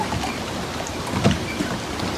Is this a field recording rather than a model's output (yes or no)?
yes